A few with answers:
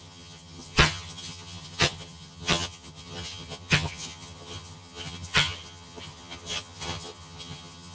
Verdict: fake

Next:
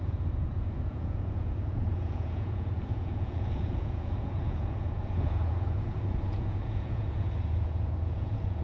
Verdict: fake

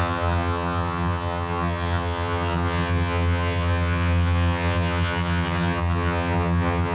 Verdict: fake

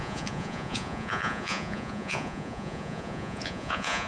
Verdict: fake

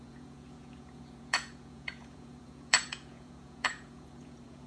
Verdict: fake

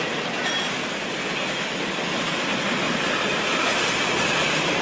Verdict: real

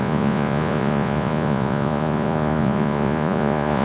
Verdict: fake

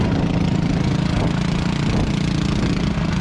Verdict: real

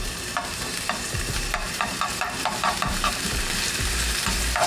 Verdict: fake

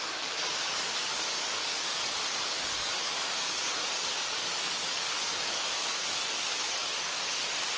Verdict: fake